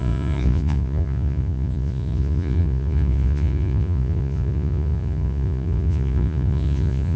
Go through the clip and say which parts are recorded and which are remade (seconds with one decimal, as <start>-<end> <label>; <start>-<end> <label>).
0.0-7.2 remade